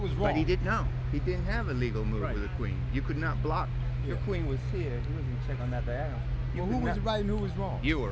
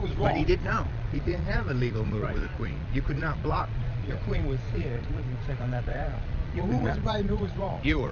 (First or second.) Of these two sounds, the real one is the first